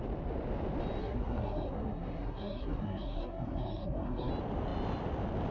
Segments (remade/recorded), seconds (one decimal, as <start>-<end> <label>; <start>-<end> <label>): 0.0-1.0 recorded; 1.0-4.3 remade; 4.3-5.5 recorded